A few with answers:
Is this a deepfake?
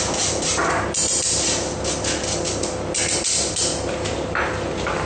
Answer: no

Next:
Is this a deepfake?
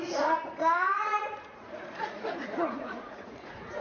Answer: yes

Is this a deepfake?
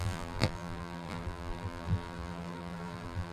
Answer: yes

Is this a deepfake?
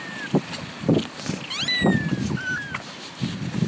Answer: no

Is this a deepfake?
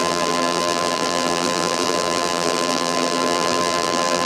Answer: yes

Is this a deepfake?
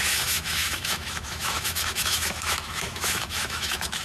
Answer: yes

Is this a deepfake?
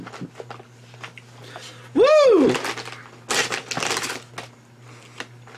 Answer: no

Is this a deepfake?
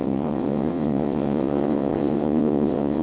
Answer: yes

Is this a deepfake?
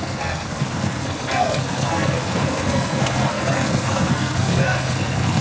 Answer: yes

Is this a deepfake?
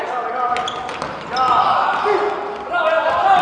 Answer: no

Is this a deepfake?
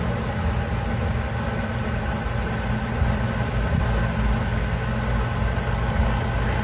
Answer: no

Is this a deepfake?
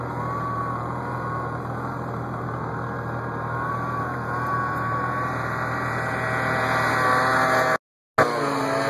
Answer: no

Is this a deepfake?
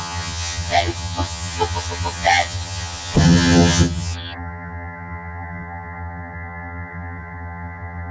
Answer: yes